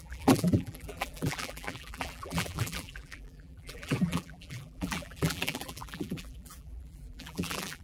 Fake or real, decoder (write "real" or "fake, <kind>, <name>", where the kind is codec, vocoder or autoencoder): fake, vocoder, BigVGAN v2